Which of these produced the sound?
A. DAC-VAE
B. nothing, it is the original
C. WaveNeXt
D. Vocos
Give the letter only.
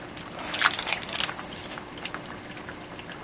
B